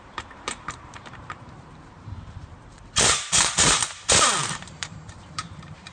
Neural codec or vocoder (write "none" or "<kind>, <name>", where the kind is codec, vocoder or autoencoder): vocoder, BigVGAN v2